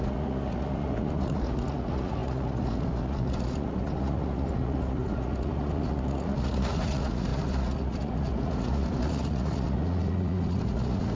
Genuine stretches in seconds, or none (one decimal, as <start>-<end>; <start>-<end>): none